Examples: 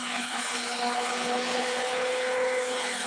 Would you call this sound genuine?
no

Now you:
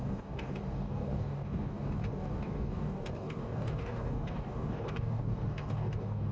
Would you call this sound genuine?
no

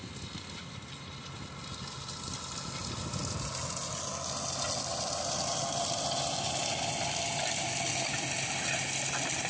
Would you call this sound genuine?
yes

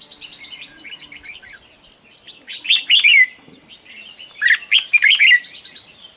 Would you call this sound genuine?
yes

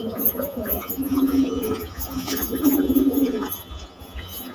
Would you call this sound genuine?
no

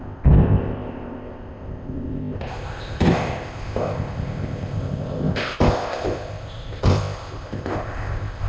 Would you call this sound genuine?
no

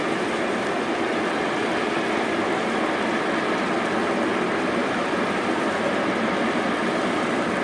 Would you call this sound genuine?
yes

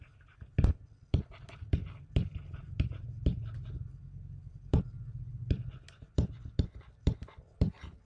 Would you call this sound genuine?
no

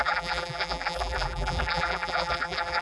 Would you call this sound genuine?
no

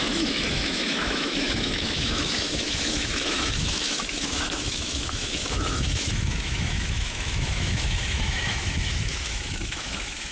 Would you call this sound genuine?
no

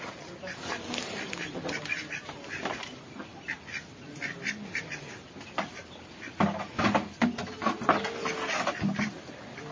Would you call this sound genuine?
yes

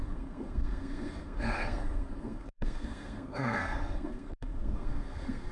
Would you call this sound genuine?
no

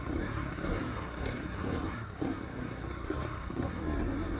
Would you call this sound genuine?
no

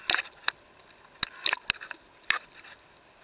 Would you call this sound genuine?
yes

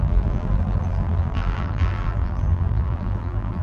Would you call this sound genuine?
no